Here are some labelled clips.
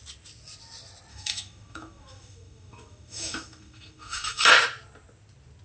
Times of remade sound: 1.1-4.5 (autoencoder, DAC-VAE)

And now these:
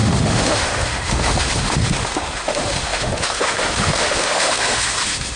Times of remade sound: 0.0-5.4 (autoencoder, DAC-VAE)

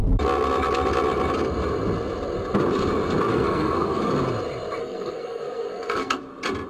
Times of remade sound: 3.3-4.1 (codec, SNAC); 4.8-6.2

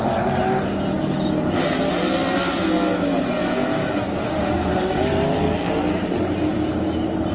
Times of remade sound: 4.2-5.0 (autoencoder, DAC-VAE)

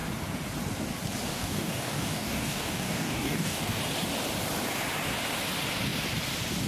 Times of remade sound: 1.3-3.8 (codec, DAC)

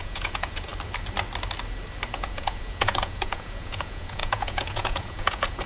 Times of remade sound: 0.0-0.7 (vocoder, Vocos); 2.1-5.7

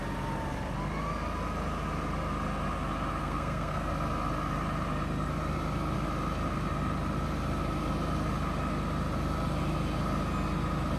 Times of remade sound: 3.2-3.9 (codec, SNAC)